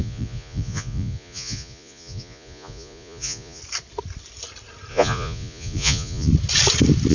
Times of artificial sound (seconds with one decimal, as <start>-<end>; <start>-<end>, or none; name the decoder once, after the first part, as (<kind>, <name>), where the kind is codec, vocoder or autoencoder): 0.0-3.6 (vocoder, Vocos); 4.9-6.3